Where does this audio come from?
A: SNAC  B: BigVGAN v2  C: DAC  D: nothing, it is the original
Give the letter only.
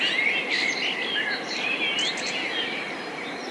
D